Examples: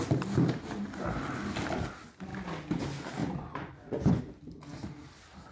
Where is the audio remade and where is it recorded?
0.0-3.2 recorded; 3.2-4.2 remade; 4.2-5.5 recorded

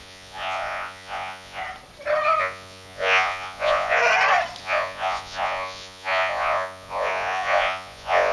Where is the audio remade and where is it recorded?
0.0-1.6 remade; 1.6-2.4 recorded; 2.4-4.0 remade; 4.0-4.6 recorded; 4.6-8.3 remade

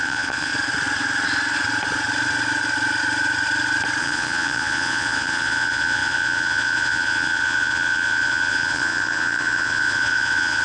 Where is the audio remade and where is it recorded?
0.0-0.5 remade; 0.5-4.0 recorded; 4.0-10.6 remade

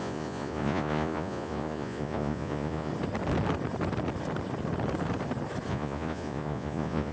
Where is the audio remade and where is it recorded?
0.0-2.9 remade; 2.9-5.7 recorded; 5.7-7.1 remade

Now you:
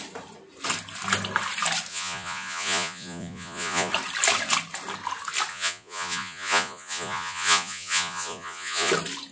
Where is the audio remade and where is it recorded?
0.0-1.9 recorded; 1.9-3.9 remade; 3.9-5.5 recorded; 5.5-8.9 remade; 8.9-9.3 recorded

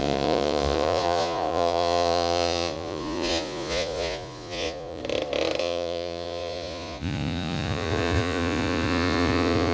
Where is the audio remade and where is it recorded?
0.0-5.0 remade; 5.0-5.6 recorded; 5.6-9.7 remade

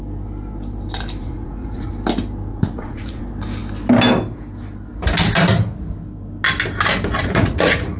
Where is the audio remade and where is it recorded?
0.0-1.2 recorded; 1.2-1.9 remade; 1.9-2.5 recorded; 2.5-3.2 remade; 3.2-7.2 recorded; 7.2-8.0 remade